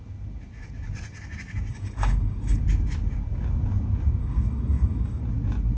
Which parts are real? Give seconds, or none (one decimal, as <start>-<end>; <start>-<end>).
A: 0.0-1.7; 2.6-4.2; 5.2-5.8